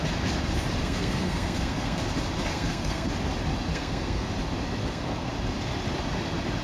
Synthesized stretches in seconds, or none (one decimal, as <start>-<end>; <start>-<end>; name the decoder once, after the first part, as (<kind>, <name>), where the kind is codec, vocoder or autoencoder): 0.8-2.0 (codec, SNAC); 2.5-3.1; 3.7-4.3; 4.8-5.3